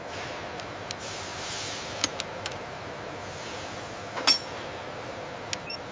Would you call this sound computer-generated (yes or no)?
no